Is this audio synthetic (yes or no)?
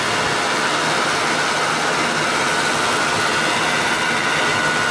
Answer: no